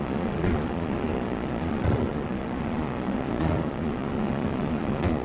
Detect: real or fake fake